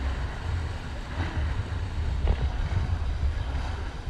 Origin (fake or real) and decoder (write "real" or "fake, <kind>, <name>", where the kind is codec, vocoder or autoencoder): real